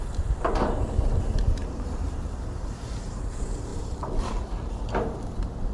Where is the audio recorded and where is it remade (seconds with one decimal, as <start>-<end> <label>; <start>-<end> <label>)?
0.0-1.6 recorded; 1.6-3.2 remade; 3.2-3.7 recorded; 3.7-4.7 remade; 4.7-5.7 recorded